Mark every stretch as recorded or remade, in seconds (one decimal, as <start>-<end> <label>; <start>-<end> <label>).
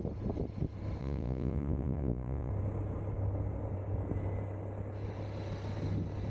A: 0.0-1.0 recorded; 1.0-2.5 remade; 2.5-6.3 recorded